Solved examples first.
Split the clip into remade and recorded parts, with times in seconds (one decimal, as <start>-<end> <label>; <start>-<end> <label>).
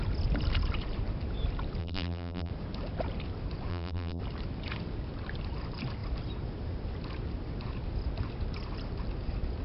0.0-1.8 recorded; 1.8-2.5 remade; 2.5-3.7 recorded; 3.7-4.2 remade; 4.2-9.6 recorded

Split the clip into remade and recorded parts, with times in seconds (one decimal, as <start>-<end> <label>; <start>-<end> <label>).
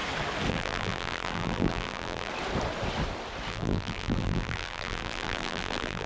0.0-0.5 recorded; 0.5-2.3 remade; 2.3-3.5 recorded; 3.5-6.1 remade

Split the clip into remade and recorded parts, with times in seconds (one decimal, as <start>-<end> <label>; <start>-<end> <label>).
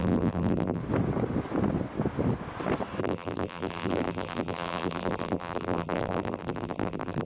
0.0-0.8 remade; 0.8-3.0 recorded; 3.0-7.2 remade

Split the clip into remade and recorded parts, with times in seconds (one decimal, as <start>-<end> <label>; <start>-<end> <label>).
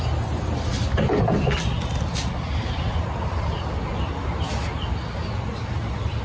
0.0-6.2 recorded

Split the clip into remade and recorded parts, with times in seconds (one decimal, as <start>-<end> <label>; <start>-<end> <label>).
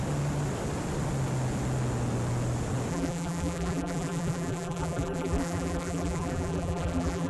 0.0-2.9 recorded; 2.9-7.3 remade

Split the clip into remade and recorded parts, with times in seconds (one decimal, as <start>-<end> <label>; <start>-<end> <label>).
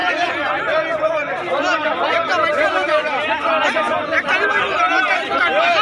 0.0-5.8 recorded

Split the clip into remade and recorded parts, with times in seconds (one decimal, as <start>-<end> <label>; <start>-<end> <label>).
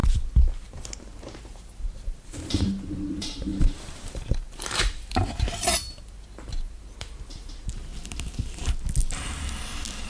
0.0-1.0 recorded; 1.0-7.9 remade; 7.9-10.1 recorded